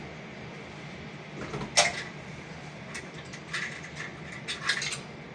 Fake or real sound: real